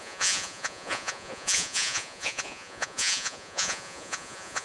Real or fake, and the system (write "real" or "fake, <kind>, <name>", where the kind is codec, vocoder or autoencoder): fake, vocoder, Vocos